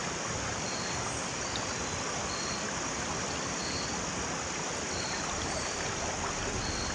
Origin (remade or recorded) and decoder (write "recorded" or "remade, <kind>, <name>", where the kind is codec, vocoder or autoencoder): recorded